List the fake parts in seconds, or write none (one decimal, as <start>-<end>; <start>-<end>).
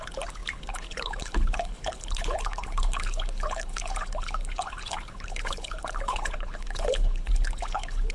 0.0-8.1